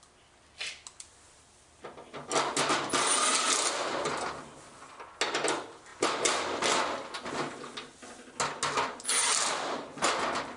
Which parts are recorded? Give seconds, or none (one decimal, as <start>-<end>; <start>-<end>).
0.0-10.6